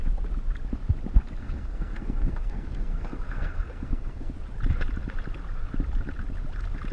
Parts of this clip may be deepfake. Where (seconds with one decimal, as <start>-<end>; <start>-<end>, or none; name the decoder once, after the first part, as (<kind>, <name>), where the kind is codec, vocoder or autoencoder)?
1.4-4.3 (codec, SNAC)